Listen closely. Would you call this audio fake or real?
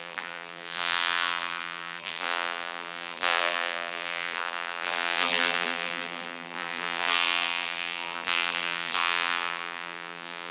fake